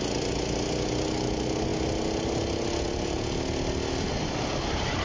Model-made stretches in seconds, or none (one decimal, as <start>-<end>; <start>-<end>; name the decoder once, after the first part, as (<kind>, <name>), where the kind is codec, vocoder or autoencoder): none